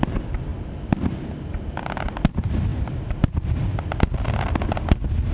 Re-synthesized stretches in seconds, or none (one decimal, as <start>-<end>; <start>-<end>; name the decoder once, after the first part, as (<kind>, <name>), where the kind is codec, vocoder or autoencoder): none